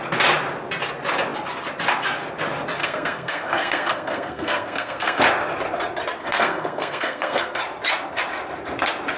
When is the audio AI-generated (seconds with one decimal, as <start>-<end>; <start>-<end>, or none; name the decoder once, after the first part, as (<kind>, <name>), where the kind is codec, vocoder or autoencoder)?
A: 2.8-5.2 (codec, SNAC); 6.2-7.6